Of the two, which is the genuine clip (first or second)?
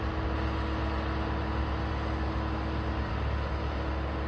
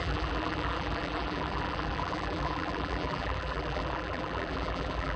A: first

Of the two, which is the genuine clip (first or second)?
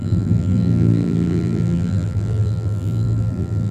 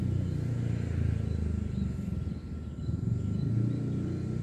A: second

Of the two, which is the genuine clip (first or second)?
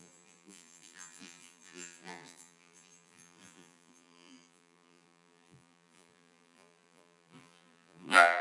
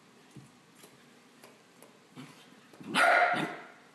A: second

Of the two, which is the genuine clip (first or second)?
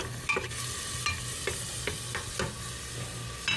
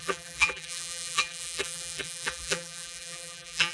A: first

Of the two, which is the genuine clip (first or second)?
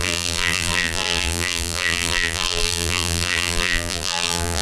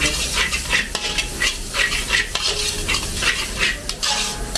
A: second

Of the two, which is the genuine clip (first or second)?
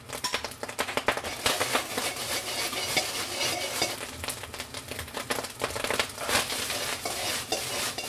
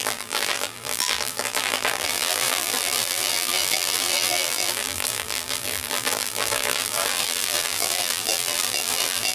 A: first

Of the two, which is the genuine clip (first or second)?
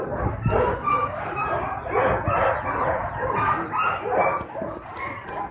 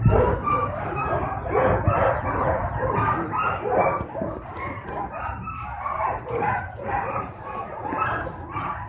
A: first